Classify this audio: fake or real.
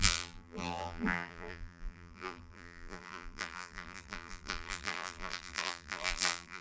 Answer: fake